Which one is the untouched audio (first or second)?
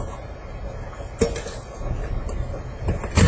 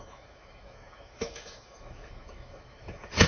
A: first